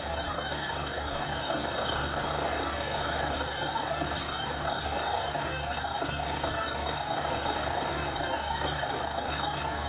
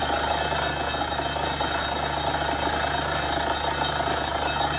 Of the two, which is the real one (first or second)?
second